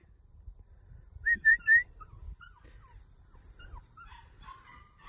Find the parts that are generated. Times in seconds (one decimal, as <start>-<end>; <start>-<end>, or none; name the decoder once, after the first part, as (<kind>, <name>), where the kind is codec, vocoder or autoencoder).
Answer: 0.0-5.1 (vocoder, BigVGAN v2)